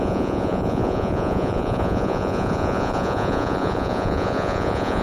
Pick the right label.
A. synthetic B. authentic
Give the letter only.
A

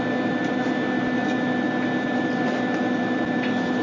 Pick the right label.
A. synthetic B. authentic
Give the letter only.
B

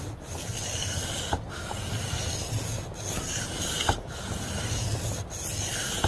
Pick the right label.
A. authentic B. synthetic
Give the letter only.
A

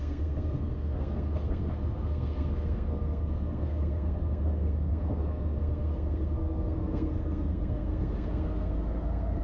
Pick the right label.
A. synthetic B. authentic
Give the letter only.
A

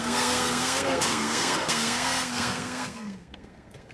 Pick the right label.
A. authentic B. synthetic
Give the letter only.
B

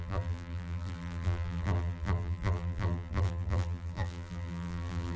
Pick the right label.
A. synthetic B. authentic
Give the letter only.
A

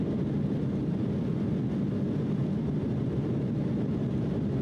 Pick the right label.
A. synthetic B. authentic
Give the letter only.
B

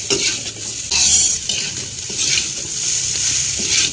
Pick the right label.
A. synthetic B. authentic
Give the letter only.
B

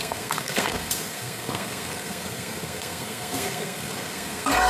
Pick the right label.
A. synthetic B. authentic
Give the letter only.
A